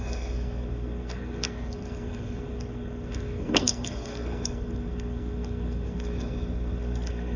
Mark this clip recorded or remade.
remade